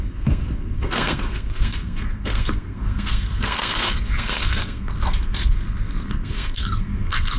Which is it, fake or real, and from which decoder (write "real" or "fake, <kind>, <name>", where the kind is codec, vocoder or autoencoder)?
fake, codec, SNAC